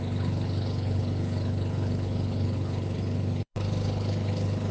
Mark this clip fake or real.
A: fake